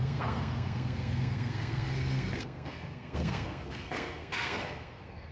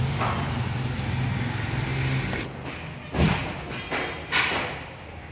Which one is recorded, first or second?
second